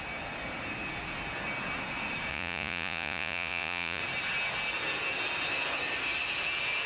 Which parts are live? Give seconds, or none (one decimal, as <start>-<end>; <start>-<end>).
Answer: 0.0-2.3; 4.0-6.9